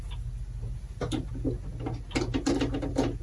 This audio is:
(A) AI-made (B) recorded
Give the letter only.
B